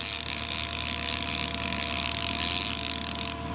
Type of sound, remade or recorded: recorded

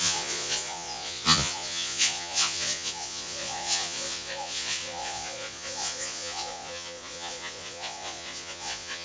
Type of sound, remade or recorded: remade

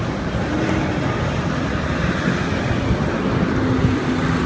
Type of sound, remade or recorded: recorded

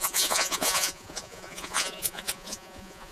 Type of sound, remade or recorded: remade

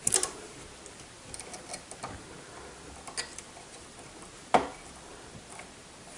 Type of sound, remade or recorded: recorded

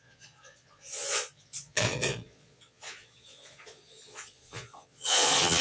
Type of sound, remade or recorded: remade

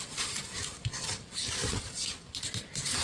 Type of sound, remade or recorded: recorded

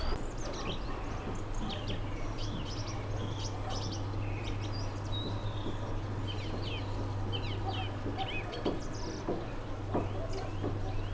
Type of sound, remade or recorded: recorded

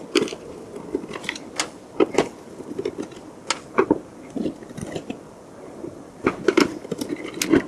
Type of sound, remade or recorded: recorded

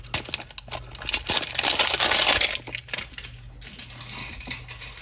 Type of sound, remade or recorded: recorded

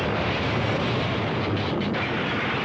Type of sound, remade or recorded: recorded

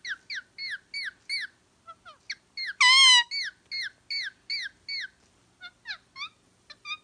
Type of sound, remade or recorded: recorded